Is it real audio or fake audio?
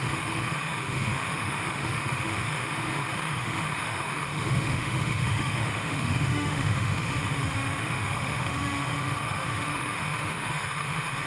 fake